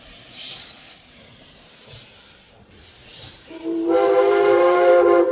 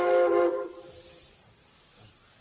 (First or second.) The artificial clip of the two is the first